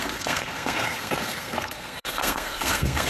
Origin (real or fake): fake